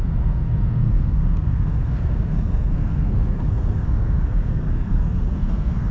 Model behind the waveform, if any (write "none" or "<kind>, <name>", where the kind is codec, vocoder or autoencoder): codec, SNAC